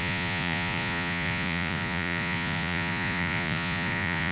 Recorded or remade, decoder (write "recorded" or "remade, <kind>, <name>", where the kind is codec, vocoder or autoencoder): remade, vocoder, Vocos